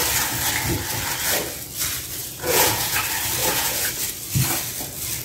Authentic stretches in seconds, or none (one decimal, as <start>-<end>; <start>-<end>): 0.0-2.2; 3.0-3.4; 3.9-5.2